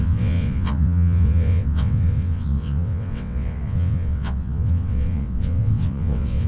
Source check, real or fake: fake